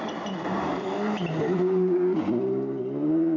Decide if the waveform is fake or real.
real